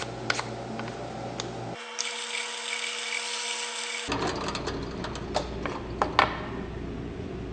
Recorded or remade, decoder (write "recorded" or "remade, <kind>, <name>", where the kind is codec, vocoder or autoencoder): recorded